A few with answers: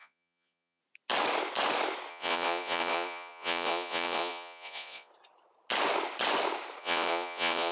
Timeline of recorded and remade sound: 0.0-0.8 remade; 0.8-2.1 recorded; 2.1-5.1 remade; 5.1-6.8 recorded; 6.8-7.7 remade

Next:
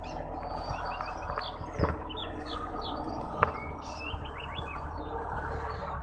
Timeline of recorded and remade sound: 0.0-2.2 recorded; 2.2-5.0 remade; 5.0-6.0 recorded